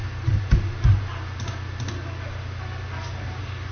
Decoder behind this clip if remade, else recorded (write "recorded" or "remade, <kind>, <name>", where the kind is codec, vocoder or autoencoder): recorded